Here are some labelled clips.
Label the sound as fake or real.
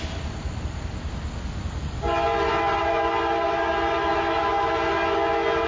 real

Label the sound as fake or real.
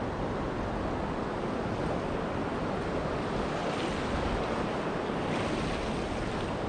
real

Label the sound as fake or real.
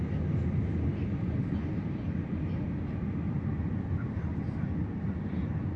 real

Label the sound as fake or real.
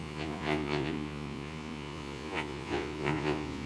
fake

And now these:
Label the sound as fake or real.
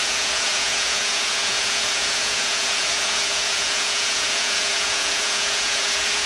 fake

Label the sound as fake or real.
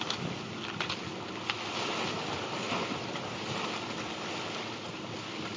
real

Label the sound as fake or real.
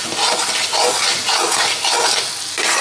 real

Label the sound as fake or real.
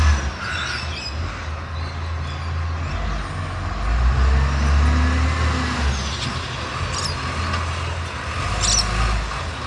real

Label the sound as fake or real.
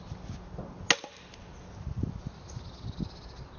real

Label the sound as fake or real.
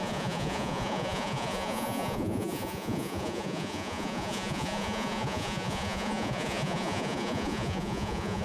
fake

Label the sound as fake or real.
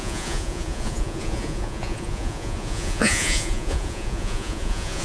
fake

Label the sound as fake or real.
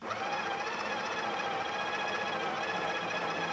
real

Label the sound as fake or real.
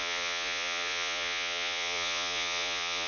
fake